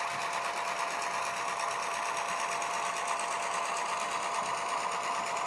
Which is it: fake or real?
fake